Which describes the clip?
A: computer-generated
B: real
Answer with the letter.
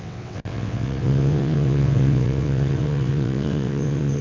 A